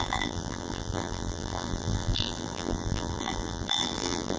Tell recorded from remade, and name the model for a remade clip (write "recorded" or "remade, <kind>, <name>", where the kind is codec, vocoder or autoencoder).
remade, vocoder, BigVGAN v2